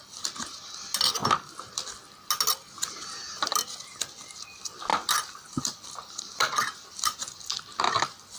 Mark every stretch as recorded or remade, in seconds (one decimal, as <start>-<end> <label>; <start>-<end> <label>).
0.0-4.9 recorded; 4.9-7.8 remade; 7.8-8.4 recorded